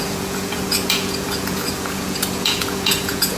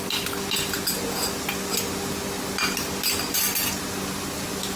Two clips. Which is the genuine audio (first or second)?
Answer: second